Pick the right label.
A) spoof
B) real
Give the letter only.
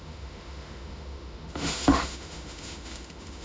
A